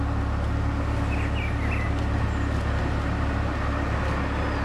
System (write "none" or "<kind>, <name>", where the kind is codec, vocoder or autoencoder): none